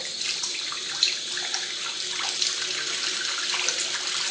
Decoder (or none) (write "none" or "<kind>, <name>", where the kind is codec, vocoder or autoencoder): none